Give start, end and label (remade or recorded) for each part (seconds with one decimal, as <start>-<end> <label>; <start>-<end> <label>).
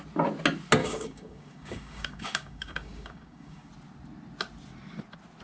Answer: 0.0-0.8 recorded; 0.8-3.7 remade; 3.7-5.4 recorded